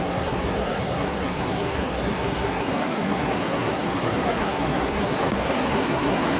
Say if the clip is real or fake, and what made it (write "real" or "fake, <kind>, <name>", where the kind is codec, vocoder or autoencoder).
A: fake, codec, SNAC